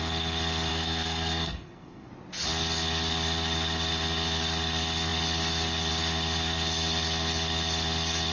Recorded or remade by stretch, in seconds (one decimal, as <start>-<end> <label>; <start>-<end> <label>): 0.0-0.7 recorded; 0.7-2.1 remade; 2.1-8.3 recorded